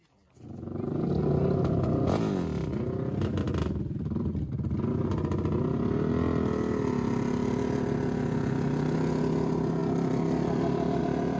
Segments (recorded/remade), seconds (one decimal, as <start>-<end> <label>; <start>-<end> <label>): 0.0-11.4 recorded